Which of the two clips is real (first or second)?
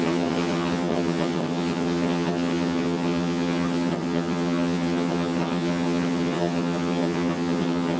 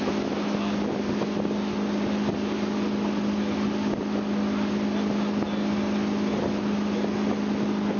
second